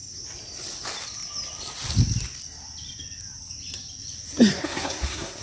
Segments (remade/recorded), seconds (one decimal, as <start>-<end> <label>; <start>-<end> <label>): 0.0-4.5 recorded; 4.5-5.4 remade